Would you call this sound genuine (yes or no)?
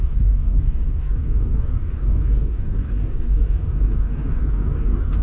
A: no